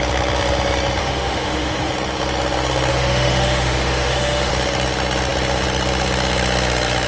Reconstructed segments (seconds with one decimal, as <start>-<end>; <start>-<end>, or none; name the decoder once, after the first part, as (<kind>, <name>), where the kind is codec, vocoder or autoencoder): 1.0-1.9 (autoencoder, DAC-VAE); 2.9-4.5